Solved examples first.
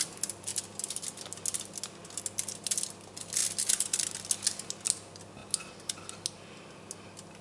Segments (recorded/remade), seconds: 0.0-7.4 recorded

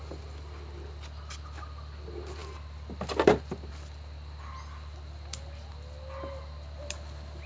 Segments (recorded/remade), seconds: 0.0-7.5 recorded

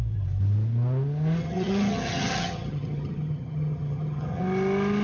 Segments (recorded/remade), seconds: 0.0-1.4 recorded; 1.4-4.4 remade; 4.4-5.0 recorded

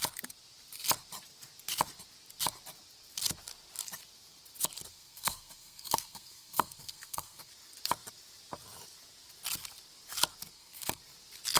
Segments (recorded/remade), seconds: 0.0-4.9 recorded; 4.9-7.5 remade; 7.5-10.5 recorded; 10.5-11.0 remade; 11.0-11.6 recorded

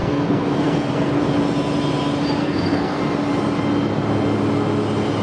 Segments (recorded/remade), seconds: 0.0-1.2 remade; 1.2-2.4 recorded; 2.4-3.0 remade; 3.0-5.2 recorded